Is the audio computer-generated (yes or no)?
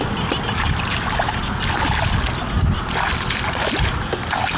no